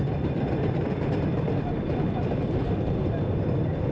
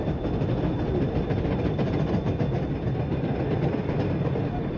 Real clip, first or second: second